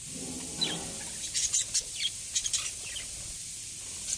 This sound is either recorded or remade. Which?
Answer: recorded